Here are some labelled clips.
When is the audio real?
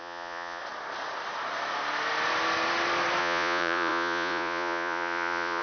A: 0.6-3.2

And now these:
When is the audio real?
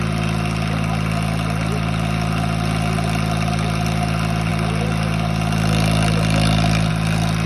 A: 0.0-7.5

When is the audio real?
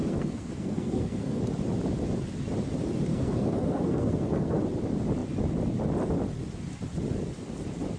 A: 1.4-3.1; 4.6-8.0